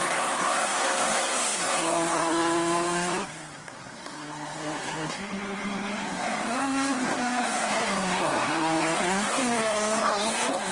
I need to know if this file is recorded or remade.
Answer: remade